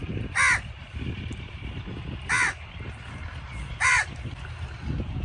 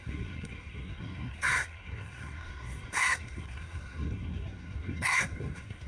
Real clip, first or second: first